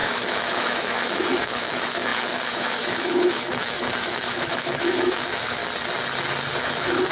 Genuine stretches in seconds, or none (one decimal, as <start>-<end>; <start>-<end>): 5.6-6.6